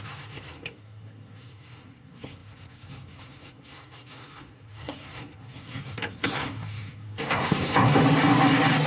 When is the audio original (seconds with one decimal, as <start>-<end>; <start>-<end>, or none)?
8.0-8.9